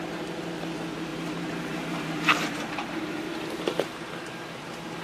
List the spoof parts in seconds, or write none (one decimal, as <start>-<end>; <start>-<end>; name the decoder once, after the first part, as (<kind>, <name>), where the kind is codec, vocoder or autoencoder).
1.1-4.1 (vocoder, BigVGAN v2)